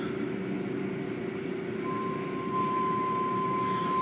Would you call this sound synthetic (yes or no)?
no